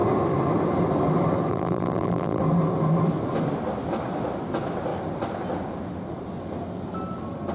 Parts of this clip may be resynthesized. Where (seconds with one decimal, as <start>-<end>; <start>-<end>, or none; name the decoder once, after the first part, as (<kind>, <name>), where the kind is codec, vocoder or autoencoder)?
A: 1.5-2.4 (vocoder, BigVGAN v2)